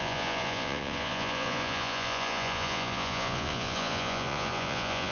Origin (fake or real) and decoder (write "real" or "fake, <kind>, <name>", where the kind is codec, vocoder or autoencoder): fake, vocoder, Vocos